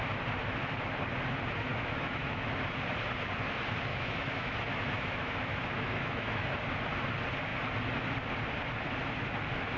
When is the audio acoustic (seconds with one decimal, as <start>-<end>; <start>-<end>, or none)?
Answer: 0.0-1.7; 2.5-3.9; 6.5-9.8